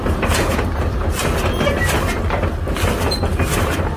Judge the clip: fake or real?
real